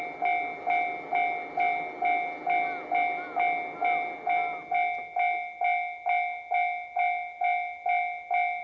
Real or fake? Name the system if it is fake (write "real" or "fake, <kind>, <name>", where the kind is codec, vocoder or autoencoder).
real